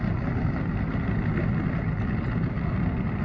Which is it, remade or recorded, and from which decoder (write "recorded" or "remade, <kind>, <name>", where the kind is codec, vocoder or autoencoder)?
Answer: recorded